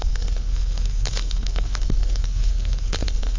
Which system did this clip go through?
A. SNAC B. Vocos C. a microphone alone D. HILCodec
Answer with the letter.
A